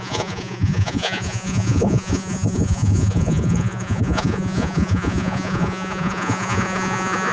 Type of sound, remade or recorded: remade